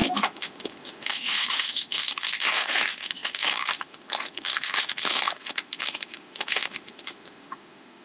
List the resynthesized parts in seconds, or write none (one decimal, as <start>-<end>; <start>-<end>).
0.0-8.0